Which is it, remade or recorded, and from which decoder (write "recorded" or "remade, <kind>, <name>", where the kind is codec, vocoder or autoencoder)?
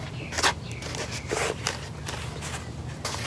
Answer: recorded